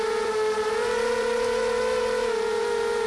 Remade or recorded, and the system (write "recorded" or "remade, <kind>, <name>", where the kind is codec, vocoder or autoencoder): remade, vocoder, BigVGAN v2